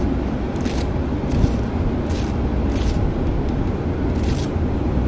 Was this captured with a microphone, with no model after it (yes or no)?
yes